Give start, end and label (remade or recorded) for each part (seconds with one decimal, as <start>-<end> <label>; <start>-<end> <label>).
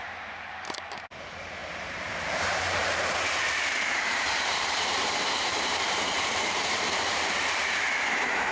0.0-8.5 remade